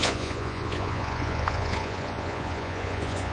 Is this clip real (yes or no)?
no